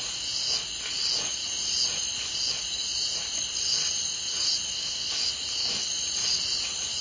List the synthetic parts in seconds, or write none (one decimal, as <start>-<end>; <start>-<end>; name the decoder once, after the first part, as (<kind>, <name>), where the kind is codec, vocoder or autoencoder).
none